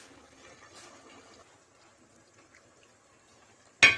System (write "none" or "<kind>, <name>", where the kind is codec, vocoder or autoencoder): none